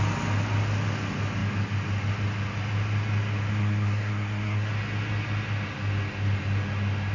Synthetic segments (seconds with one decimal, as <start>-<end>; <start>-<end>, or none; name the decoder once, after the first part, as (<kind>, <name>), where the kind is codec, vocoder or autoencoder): 3.5-4.7 (codec, SNAC)